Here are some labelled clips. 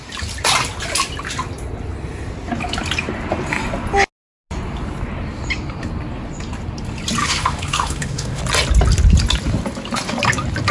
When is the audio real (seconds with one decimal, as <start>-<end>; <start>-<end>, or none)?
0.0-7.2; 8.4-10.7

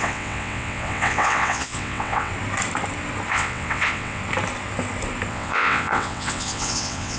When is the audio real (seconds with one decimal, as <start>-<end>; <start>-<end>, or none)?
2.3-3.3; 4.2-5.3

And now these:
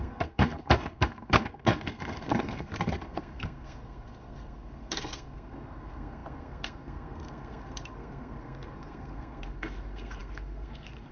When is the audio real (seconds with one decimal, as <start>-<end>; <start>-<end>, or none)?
none

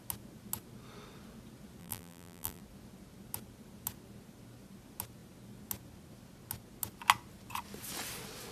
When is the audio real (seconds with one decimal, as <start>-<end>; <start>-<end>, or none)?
0.0-1.8; 2.6-8.5